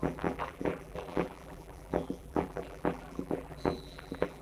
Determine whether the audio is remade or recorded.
remade